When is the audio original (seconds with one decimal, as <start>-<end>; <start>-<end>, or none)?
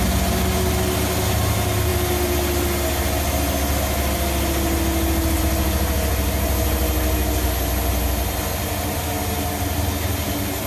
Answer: 0.0-10.7